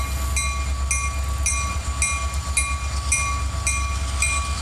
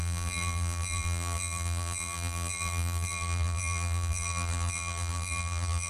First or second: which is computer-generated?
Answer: second